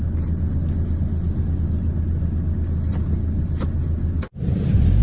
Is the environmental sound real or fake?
real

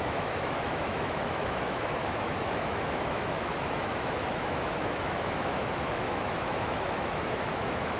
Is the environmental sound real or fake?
fake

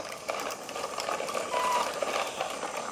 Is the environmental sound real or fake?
fake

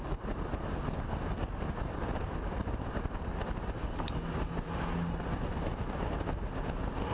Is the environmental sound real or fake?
real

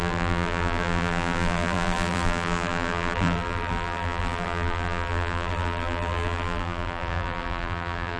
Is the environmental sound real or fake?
fake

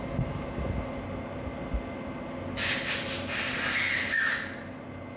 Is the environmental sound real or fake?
real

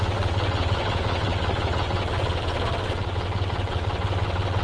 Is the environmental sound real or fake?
fake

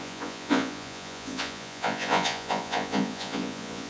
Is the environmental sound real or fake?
fake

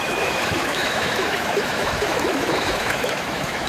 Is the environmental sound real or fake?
fake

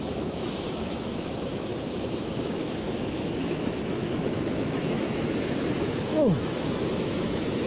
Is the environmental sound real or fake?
fake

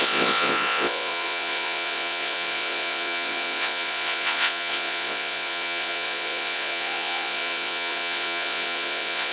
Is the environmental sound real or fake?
fake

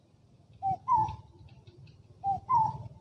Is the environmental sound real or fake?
real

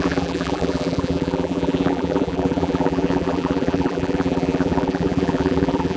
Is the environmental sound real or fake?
fake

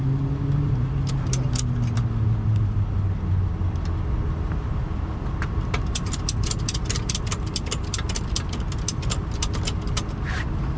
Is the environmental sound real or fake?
real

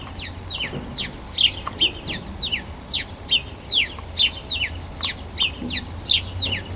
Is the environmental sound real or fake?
real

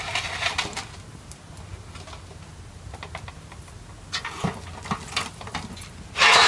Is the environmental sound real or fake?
real